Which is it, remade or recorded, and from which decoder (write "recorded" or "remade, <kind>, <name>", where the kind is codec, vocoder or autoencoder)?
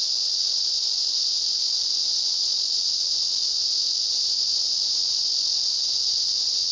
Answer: recorded